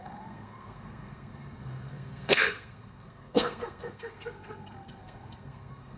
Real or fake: fake